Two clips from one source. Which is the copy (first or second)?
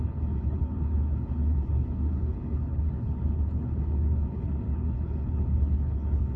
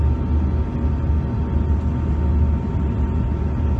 first